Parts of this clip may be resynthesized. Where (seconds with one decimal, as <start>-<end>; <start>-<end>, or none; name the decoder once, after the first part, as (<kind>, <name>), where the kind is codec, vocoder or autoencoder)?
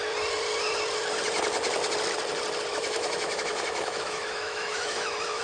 2.7-5.4 (autoencoder, DAC-VAE)